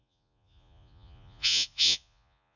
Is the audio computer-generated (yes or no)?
yes